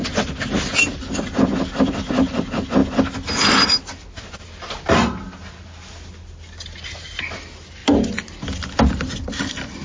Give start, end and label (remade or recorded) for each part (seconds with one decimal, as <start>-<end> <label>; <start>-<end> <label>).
0.0-9.8 recorded